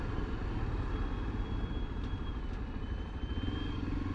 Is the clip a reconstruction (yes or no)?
no